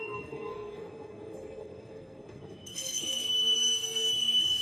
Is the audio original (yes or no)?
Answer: no